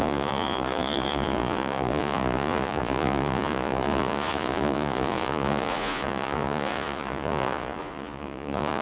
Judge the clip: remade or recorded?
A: remade